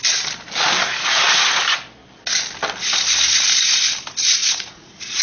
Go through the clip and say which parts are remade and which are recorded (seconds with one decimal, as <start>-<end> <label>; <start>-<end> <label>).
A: 0.0-4.4 recorded; 4.4-5.2 remade